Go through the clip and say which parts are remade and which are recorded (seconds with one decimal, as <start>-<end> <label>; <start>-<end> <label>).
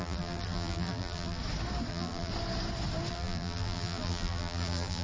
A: 0.0-1.4 remade; 1.4-1.9 recorded; 1.9-2.3 remade; 2.3-3.1 recorded; 3.1-5.0 remade